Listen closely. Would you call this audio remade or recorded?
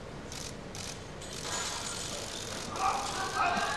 recorded